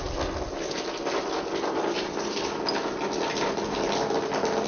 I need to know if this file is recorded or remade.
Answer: recorded